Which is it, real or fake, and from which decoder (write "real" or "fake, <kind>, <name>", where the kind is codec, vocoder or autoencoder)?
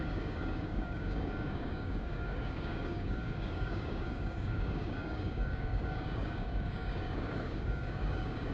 fake, codec, DAC